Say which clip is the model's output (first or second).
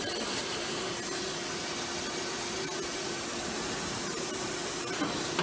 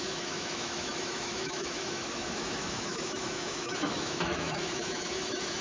second